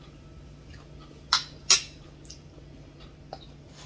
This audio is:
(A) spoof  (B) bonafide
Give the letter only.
B